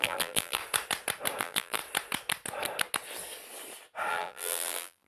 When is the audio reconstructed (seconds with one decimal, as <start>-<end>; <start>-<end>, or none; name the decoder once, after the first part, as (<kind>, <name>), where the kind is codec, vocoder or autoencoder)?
0.0-0.6 (vocoder, BigVGAN v2); 1.4-1.8; 4.1-5.1

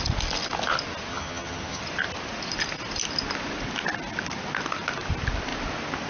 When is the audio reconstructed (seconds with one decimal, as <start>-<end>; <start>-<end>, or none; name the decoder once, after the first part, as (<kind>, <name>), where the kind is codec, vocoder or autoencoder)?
1.1-1.8 (vocoder, HiFi-GAN)

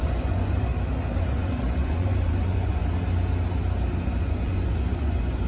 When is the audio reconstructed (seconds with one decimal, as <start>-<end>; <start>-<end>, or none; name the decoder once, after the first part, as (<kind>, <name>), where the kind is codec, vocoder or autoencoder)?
0.0-0.7 (vocoder, Vocos); 1.2-2.8; 4.2-5.5

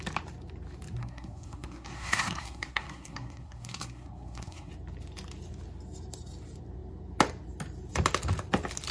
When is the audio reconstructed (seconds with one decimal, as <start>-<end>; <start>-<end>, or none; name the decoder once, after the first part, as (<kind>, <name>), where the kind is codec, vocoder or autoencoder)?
1.0-4.7 (codec, SNAC)

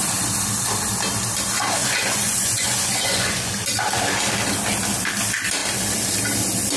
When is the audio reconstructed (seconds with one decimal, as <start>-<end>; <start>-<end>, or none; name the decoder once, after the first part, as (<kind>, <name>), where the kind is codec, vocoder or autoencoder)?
1.8-3.5 (vocoder, Vocos)

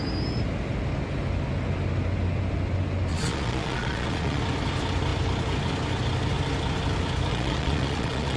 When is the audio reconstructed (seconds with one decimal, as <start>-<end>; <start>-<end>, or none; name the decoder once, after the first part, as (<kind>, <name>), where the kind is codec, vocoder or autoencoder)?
3.1-4.4 (vocoder, Vocos); 7.3-8.4

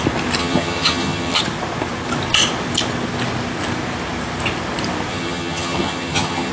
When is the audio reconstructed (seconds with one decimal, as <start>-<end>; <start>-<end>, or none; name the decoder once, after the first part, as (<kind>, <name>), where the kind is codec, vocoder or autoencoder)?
0.4-1.4 (vocoder, HiFi-GAN); 5.1-6.5

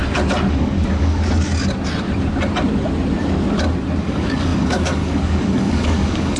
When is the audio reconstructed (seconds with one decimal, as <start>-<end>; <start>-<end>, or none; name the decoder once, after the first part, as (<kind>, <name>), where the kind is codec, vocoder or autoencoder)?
0.5-1.5 (codec, DAC); 4.0-6.4